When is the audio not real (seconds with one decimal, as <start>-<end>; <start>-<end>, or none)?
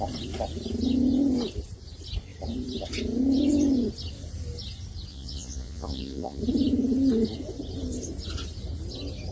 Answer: 5.1-6.4